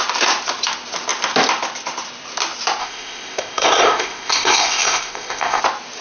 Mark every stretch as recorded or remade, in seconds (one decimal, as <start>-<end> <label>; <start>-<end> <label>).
0.0-2.8 recorded; 2.8-5.6 remade; 5.6-6.0 recorded

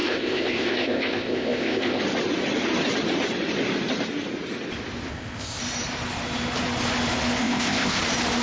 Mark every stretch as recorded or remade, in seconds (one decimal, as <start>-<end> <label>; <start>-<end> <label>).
0.0-2.0 remade; 2.0-5.1 recorded; 5.1-5.6 remade; 5.6-7.4 recorded; 7.4-8.0 remade; 8.0-8.4 recorded